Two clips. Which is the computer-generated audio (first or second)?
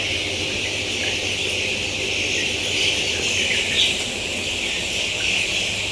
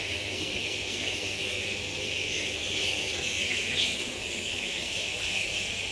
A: second